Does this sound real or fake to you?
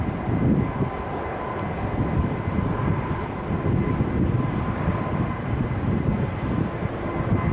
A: real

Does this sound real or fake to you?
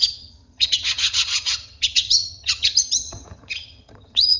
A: fake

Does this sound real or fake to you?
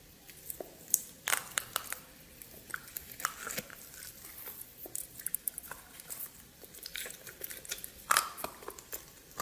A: fake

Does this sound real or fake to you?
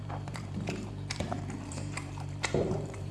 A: fake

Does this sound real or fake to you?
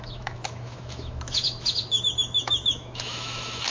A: fake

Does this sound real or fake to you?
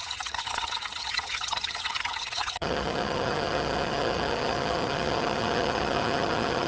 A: fake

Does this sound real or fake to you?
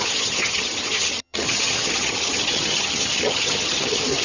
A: fake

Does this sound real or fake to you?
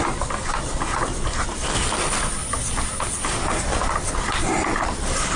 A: real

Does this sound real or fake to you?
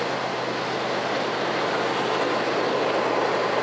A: real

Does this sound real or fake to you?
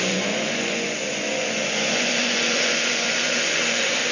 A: fake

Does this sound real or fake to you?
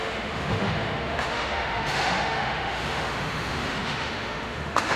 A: fake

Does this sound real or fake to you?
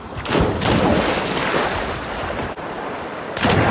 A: real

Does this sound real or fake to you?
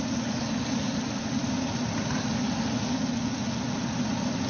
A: real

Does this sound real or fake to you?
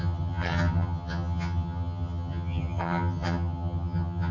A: fake